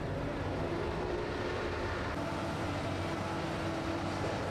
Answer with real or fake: real